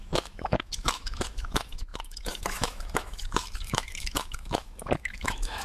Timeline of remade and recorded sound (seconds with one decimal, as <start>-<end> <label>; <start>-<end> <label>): 0.0-5.6 remade